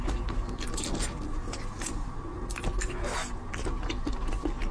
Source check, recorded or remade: recorded